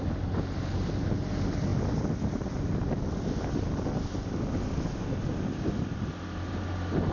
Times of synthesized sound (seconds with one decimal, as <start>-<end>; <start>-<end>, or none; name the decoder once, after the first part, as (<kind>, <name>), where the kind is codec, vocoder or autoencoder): none